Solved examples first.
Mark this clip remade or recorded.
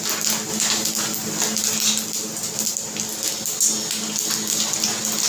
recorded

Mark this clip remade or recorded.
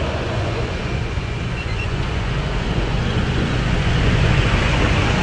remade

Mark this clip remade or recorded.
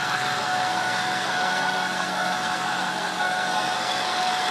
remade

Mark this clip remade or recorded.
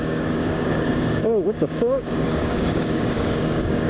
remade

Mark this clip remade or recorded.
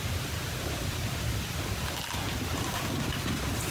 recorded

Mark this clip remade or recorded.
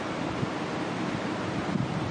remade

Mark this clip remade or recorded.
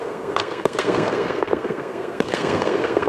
remade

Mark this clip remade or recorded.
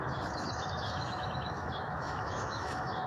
remade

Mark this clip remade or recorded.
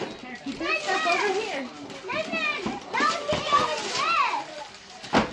recorded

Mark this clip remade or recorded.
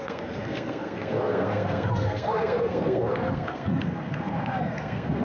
remade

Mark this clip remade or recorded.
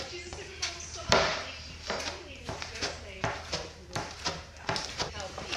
remade